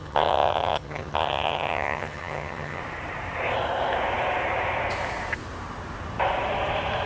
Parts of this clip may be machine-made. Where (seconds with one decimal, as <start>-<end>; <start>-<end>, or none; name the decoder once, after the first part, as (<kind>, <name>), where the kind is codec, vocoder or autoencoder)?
0.0-2.8 (vocoder, HiFi-GAN)